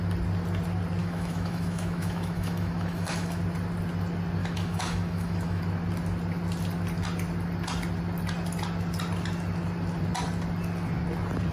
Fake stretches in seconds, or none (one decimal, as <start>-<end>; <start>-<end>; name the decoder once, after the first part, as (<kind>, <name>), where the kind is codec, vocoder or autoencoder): 1.0-3.4 (autoencoder, DAC-VAE); 4.4-5.6